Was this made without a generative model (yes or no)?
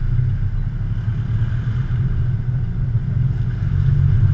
yes